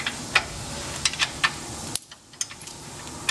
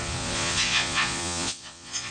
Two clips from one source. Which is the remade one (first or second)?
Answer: second